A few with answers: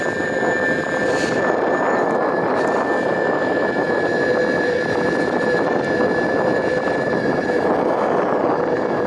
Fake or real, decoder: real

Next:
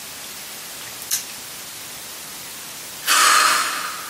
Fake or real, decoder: real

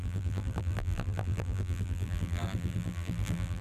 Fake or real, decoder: fake, vocoder, BigVGAN v2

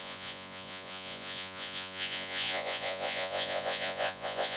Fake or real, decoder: fake, vocoder, Vocos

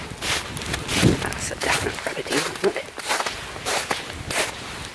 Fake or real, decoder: real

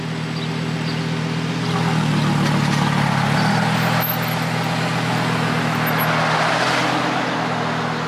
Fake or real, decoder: real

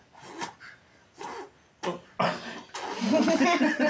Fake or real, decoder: real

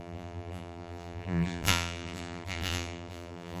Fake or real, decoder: fake, vocoder, BigVGAN v2